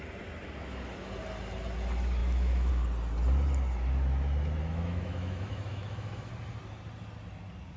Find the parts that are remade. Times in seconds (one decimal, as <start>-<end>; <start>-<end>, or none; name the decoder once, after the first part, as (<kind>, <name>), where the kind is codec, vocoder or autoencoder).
2.2-2.7 (autoencoder, DAC-VAE); 4.6-6.3